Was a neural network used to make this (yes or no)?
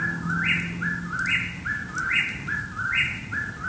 no